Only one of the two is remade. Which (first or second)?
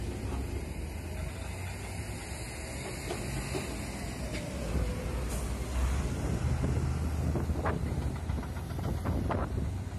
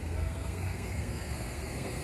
second